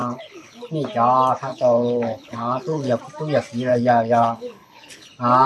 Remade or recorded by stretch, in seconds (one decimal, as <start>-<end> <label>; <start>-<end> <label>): 0.0-0.7 remade; 0.7-1.5 recorded; 1.5-3.0 remade; 3.0-3.7 recorded; 3.7-5.1 remade; 5.1-5.5 recorded